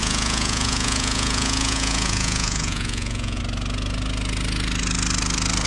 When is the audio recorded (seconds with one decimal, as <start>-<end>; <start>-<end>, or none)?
3.4-5.7